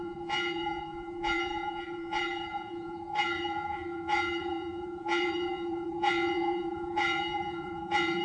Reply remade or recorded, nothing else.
remade